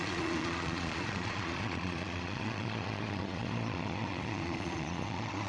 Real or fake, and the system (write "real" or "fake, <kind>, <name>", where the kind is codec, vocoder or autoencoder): fake, vocoder, Vocos